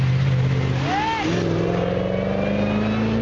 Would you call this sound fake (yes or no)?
no